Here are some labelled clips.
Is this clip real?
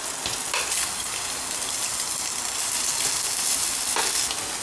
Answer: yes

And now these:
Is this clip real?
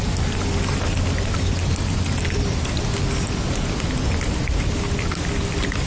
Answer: yes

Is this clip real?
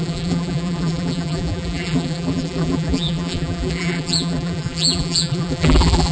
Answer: no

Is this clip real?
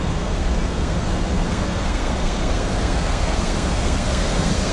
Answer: no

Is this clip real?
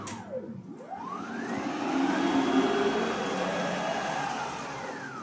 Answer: yes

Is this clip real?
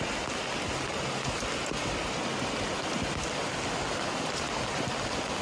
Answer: yes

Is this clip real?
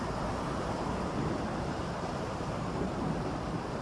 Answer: no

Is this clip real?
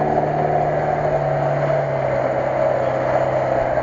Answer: yes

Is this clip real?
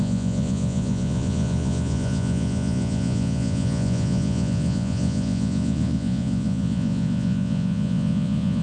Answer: no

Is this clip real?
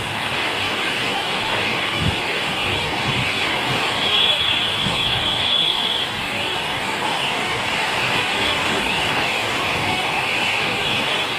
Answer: no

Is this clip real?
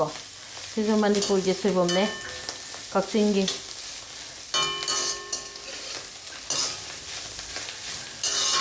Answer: yes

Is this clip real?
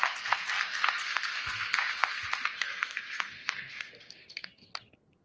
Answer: no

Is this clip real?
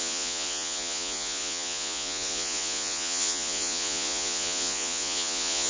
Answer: no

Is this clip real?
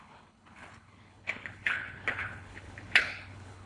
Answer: no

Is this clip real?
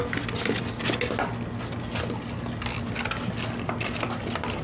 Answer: yes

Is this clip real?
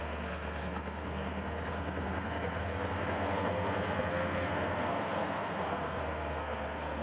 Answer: no